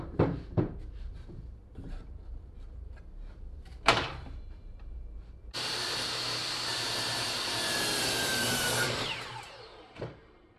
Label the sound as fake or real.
fake